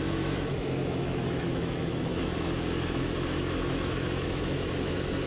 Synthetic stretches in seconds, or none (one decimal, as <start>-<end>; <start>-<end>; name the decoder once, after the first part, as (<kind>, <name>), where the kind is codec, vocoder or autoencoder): 0.0-5.3 (autoencoder, DAC-VAE)